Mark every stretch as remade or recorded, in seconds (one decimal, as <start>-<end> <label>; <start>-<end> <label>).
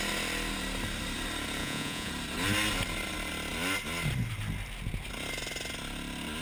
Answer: 0.0-1.6 recorded; 1.6-2.1 remade; 2.1-6.4 recorded